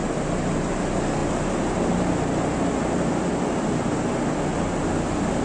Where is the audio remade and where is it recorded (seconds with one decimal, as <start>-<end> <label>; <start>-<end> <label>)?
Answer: 0.0-5.4 recorded